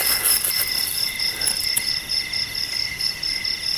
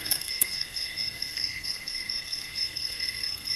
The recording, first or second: first